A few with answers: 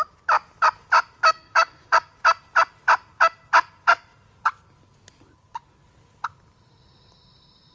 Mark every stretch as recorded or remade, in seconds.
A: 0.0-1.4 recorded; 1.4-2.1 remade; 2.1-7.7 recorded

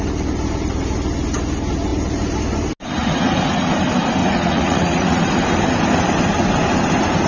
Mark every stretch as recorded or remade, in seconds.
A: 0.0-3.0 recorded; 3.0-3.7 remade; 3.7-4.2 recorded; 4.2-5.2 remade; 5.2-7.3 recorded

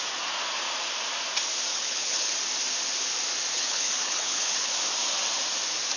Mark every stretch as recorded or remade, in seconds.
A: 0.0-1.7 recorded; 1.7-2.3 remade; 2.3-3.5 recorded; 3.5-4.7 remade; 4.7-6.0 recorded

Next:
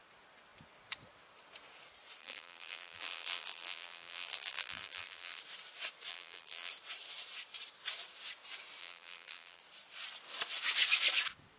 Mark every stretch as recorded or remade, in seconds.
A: 0.0-2.2 recorded; 2.2-5.4 remade; 5.4-6.1 recorded; 6.1-6.7 remade; 6.7-8.8 recorded; 8.8-9.6 remade; 9.6-11.6 recorded

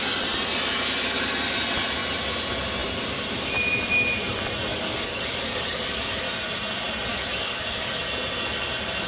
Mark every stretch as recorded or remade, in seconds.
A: 0.0-4.7 recorded; 4.7-6.2 remade; 6.2-7.1 recorded; 7.1-8.0 remade; 8.0-9.1 recorded

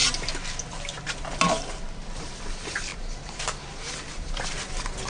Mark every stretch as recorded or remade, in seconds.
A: 0.0-2.9 recorded; 2.9-4.5 remade; 4.5-5.1 recorded

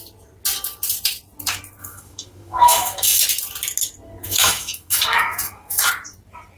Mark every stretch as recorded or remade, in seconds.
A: 0.0-1.8 recorded; 1.8-3.2 remade; 3.2-4.2 recorded; 4.2-5.9 remade; 5.9-6.6 recorded